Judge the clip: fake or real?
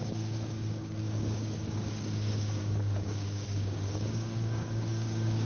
fake